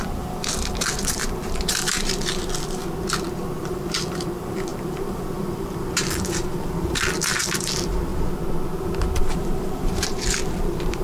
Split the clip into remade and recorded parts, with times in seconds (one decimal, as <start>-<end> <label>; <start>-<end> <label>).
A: 0.0-2.8 remade; 2.8-3.6 recorded; 3.6-8.1 remade; 8.1-9.2 recorded; 9.2-11.0 remade

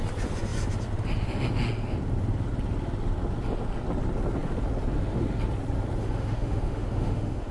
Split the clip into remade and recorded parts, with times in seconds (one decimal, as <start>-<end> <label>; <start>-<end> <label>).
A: 0.0-6.0 recorded; 6.0-7.5 remade

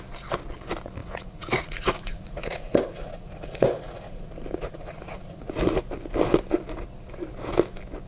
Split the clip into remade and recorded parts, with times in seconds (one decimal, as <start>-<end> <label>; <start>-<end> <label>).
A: 0.0-1.0 recorded; 1.0-5.8 remade; 5.8-8.1 recorded

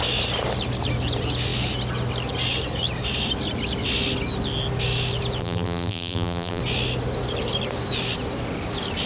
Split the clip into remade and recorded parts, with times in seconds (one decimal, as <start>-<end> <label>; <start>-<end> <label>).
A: 0.0-5.4 recorded; 5.4-6.6 remade; 6.6-9.1 recorded

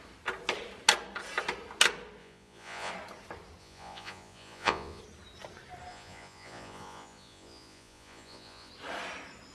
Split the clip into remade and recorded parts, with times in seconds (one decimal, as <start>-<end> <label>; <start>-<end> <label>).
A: 0.0-2.2 recorded; 2.2-2.9 remade; 2.9-3.6 recorded; 3.6-5.0 remade; 5.0-5.9 recorded; 5.9-8.7 remade; 8.7-9.5 recorded

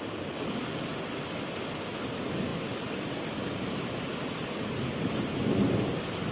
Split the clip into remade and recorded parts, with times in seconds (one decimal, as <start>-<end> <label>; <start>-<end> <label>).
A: 0.0-6.3 recorded

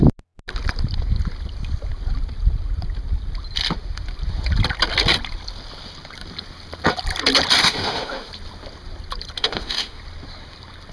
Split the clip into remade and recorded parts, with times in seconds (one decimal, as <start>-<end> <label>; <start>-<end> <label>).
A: 0.0-7.6 recorded; 7.6-8.3 remade; 8.3-9.4 recorded; 9.4-10.0 remade; 10.0-10.9 recorded